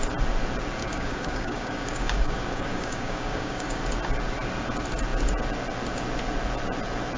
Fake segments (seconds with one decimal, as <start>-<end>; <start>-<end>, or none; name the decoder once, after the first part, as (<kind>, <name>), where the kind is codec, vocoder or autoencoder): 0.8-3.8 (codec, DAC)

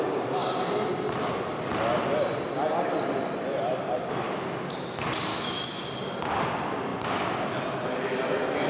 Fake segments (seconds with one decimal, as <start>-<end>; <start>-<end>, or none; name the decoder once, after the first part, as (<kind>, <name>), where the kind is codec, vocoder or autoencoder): 5.3-5.8 (autoencoder, DAC-VAE)

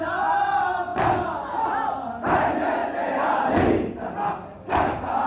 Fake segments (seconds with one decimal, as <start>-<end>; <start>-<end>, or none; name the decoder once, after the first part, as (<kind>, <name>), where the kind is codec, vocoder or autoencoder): none

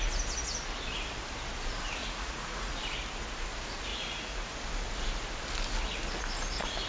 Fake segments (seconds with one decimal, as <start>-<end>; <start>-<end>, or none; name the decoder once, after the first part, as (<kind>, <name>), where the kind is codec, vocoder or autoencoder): 2.0-2.8 (vocoder, Vocos); 3.9-4.5